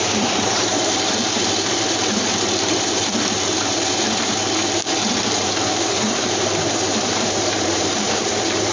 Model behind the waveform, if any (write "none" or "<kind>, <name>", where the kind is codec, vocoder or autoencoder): vocoder, BigVGAN v2